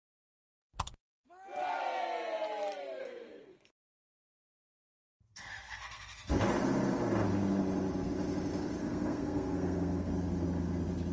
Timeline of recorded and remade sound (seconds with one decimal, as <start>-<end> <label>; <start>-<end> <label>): 0.0-3.0 recorded; 3.0-6.3 remade; 6.3-8.8 recorded; 8.8-10.1 remade; 10.1-11.1 recorded